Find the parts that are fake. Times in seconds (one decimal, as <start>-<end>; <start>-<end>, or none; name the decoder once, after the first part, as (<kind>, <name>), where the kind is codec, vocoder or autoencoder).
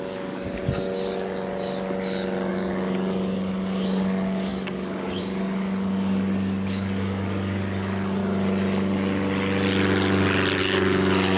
0.0-0.6 (codec, DAC); 2.5-8.2; 10.6-11.4